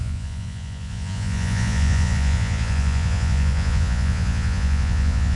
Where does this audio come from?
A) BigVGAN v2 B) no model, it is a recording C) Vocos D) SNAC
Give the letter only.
C